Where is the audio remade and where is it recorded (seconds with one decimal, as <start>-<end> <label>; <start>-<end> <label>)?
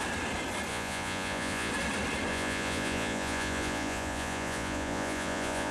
0.0-0.7 recorded; 0.7-1.7 remade; 1.7-2.3 recorded; 2.3-5.7 remade